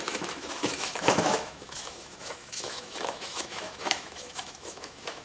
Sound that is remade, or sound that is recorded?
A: remade